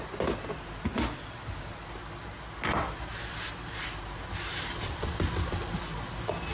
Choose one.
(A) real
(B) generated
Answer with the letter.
A